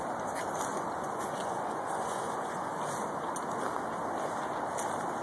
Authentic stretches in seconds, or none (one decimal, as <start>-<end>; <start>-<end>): 0.0-0.7; 2.7-5.2